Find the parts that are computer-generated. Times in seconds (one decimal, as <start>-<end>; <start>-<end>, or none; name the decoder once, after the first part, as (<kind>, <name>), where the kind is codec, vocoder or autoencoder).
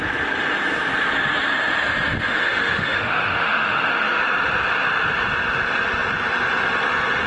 2.3-4.2 (autoencoder, DAC-VAE)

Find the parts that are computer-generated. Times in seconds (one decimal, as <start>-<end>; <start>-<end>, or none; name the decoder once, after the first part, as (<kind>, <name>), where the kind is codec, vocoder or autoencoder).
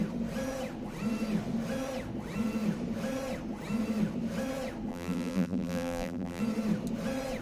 4.9-6.4 (vocoder, BigVGAN v2)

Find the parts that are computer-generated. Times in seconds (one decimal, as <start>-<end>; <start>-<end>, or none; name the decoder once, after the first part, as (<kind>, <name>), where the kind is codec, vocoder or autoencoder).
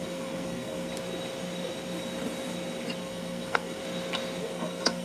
0.0-0.9 (codec, SNAC); 3.0-3.8; 4.4-5.0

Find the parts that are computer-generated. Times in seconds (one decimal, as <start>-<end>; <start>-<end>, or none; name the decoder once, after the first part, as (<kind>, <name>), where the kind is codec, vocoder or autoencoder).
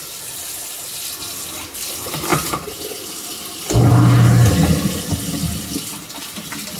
none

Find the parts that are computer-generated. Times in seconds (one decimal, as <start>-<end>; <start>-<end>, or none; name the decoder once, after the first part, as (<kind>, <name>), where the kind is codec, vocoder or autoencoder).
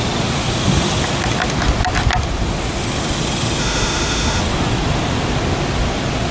3.6-4.4 (autoencoder, DAC-VAE)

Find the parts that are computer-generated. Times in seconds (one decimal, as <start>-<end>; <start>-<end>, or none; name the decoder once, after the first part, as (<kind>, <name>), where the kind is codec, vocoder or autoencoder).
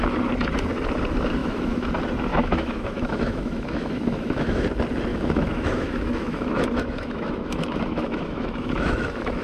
1.4-1.9 (autoencoder, DAC-VAE); 2.3-4.6; 5.1-9.4